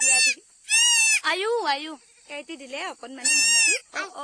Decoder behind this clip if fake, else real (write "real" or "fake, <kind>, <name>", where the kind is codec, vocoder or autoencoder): real